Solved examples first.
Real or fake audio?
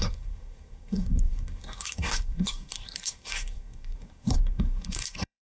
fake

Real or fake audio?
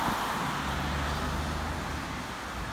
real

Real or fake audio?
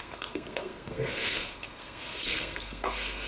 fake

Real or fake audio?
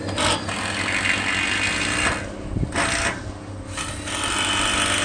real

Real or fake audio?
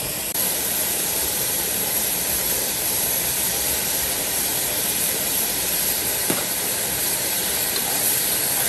fake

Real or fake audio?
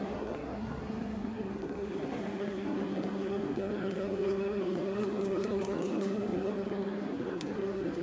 fake